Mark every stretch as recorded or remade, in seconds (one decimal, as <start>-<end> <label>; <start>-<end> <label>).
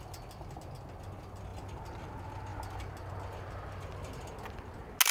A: 0.0-5.1 recorded